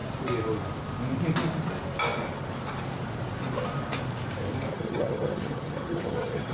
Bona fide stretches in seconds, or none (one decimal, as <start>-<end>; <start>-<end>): 0.0-4.7